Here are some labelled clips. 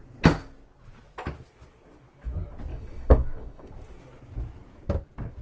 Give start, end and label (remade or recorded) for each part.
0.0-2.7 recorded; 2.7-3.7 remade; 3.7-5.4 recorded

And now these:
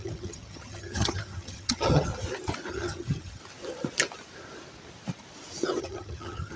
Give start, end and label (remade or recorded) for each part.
0.0-2.1 remade; 2.1-2.7 recorded; 2.7-3.4 remade; 3.4-5.8 recorded; 5.8-6.6 remade

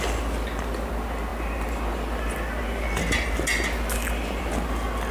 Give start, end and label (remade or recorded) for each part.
0.0-5.1 recorded

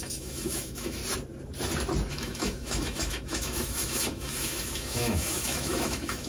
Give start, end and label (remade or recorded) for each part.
0.0-1.0 remade; 1.0-2.1 recorded; 2.1-6.3 remade